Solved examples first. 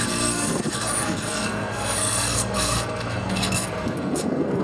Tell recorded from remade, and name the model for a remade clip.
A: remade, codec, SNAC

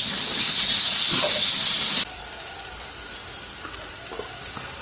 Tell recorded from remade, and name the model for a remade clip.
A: recorded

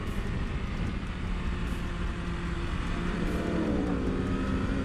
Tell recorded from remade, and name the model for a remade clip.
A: recorded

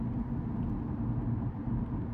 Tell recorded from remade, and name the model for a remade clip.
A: recorded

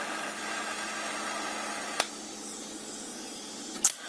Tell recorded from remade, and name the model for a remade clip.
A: recorded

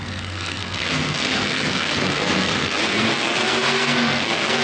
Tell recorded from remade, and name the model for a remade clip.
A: remade, codec, SNAC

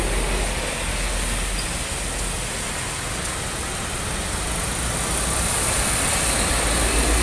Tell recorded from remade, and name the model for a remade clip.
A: recorded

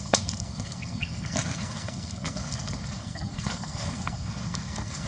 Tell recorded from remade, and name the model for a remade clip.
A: remade, codec, SNAC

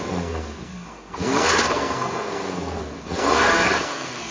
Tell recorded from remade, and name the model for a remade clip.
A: remade, codec, SNAC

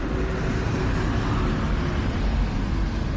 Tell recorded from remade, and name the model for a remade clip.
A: recorded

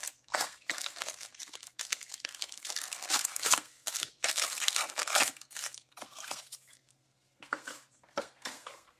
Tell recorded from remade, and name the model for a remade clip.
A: remade, codec, SNAC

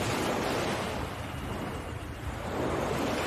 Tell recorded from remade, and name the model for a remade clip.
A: recorded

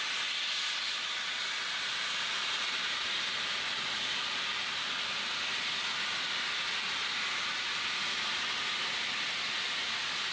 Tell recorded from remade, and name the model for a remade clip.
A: recorded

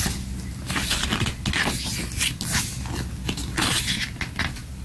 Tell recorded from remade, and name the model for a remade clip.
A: recorded